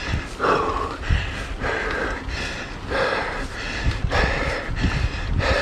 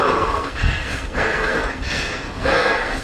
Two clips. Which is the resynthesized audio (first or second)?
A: second